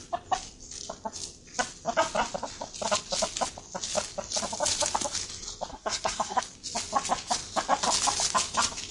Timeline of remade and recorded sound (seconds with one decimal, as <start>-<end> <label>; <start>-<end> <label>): 0.0-5.7 recorded; 5.7-6.4 remade; 6.4-8.9 recorded